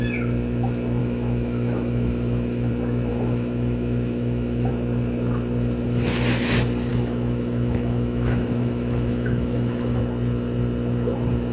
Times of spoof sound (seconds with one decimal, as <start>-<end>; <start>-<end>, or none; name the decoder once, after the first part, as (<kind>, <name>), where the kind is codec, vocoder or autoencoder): 1.0-2.7 (autoencoder, DAC-VAE); 3.1-4.7; 6.9-10.0